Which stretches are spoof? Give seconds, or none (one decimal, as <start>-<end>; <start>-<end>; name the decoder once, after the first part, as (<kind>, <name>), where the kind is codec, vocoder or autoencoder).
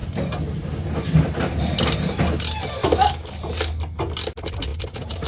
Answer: 2.8-3.3 (autoencoder, DAC-VAE)